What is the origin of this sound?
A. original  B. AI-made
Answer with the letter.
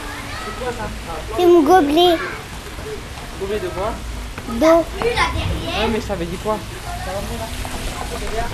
A